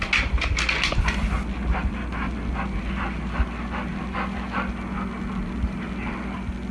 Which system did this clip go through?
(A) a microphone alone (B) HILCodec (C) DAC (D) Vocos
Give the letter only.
A